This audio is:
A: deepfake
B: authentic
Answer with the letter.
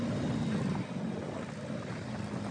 B